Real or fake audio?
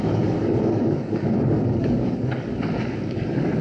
fake